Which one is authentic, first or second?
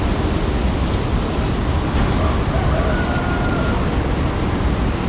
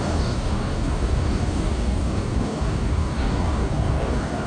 first